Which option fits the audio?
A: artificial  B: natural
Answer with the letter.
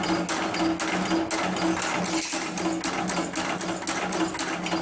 B